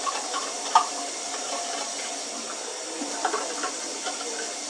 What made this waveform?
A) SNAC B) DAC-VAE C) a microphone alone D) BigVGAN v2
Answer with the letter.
C